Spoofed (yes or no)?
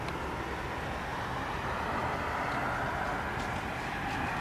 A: no